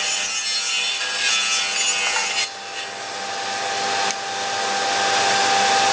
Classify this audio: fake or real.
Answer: real